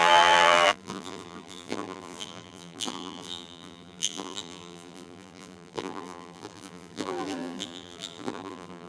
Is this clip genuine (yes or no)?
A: no